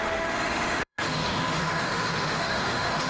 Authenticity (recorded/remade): remade